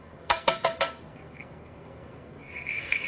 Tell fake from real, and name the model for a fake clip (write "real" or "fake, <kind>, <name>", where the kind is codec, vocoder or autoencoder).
fake, codec, SNAC